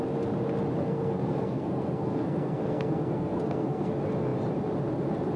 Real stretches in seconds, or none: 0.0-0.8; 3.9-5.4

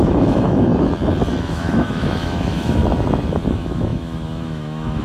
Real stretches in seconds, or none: 0.7-1.4; 2.8-3.5

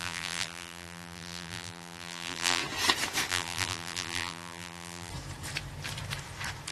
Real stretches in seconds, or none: 2.6-3.3; 5.1-6.7

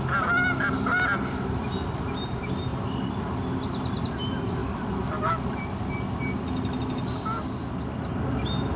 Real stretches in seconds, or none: 0.0-8.8

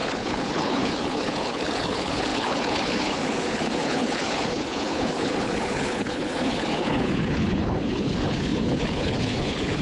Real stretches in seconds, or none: none